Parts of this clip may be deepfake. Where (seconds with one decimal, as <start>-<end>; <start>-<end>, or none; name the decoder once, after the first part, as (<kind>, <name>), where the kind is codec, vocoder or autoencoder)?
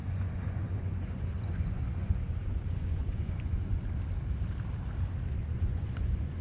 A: 0.0-3.8 (vocoder, Vocos); 5.4-6.4